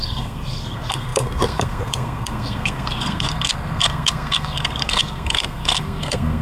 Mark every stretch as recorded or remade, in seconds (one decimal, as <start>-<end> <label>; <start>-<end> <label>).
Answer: 0.0-6.4 remade